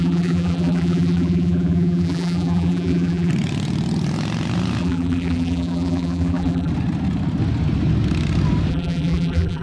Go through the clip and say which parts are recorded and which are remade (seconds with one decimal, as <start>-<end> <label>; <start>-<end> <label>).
0.0-3.3 remade; 3.3-4.8 recorded; 4.8-6.7 remade; 6.7-8.7 recorded; 8.7-9.6 remade